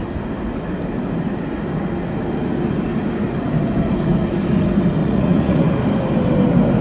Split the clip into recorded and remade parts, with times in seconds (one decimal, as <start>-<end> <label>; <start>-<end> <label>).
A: 0.0-5.0 recorded; 5.0-5.6 remade; 5.6-6.8 recorded